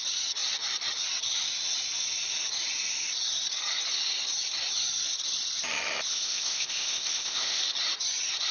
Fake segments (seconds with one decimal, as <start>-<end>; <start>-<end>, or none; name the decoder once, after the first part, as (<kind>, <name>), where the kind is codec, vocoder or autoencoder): 6.1-7.6 (codec, ZipCodec)